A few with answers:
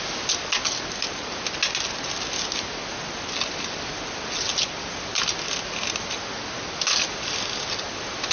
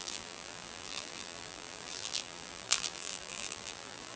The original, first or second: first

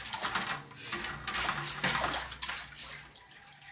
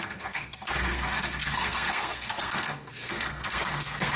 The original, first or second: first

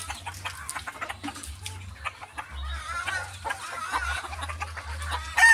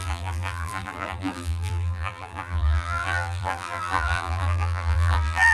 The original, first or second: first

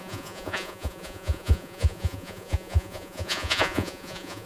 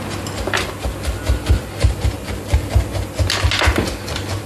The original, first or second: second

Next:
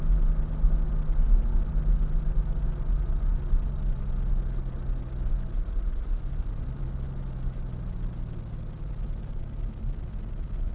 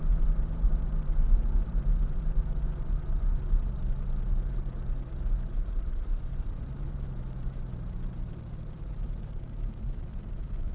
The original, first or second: first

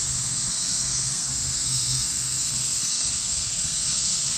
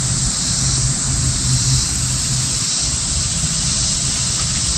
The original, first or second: second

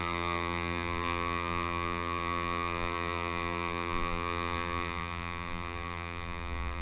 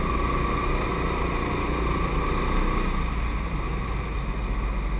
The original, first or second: second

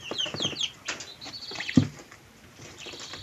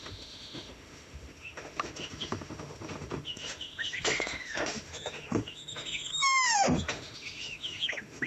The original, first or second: first